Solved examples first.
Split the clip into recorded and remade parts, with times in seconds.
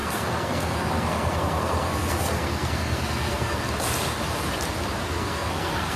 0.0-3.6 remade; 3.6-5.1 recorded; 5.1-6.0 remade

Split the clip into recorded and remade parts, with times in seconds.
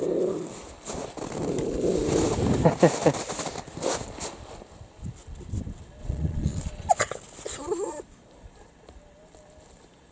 0.0-6.0 recorded; 6.0-6.9 remade; 6.9-10.1 recorded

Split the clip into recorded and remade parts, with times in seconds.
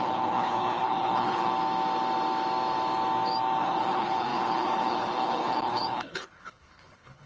0.0-1.5 remade; 1.5-3.6 recorded; 3.6-7.3 remade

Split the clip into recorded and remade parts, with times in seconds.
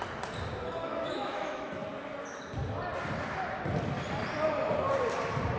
0.0-0.8 recorded; 0.8-1.7 remade; 1.7-5.6 recorded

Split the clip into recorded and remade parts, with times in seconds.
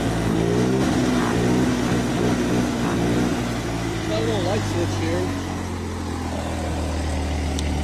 0.0-2.1 recorded; 2.1-4.1 remade; 4.1-7.8 recorded